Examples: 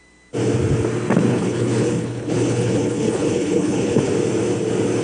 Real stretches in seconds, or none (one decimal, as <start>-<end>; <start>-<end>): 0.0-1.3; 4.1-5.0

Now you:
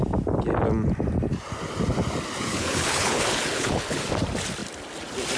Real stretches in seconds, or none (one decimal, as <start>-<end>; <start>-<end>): 0.0-2.5; 4.1-5.4

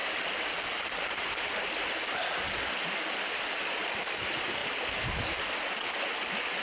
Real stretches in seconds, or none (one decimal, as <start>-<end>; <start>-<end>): 0.0-6.6

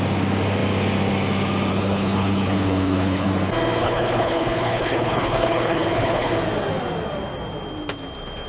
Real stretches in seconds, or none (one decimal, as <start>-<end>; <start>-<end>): 0.0-1.7; 3.3-3.8; 6.3-8.5

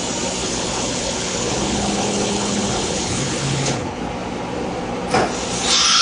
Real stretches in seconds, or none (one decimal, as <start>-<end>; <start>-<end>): 0.0-0.4; 4.0-6.0

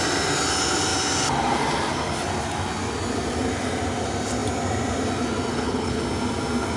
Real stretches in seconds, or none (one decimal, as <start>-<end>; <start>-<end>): 0.0-5.5; 6.0-6.8

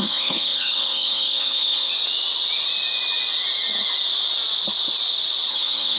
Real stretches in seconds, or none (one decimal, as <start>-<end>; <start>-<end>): 1.9-5.5